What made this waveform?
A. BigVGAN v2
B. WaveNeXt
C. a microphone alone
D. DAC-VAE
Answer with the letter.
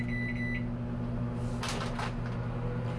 C